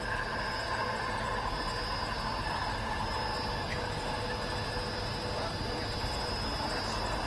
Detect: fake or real real